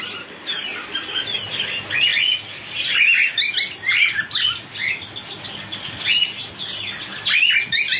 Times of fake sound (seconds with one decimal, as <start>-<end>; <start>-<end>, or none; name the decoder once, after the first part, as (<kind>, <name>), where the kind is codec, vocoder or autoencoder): none